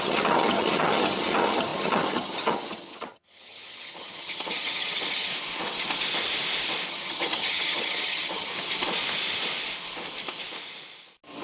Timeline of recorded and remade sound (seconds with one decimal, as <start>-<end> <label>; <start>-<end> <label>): 0.0-5.3 remade; 5.3-6.9 recorded; 6.9-8.5 remade; 8.5-11.4 recorded